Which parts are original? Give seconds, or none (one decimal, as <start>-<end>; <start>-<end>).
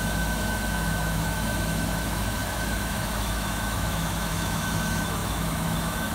none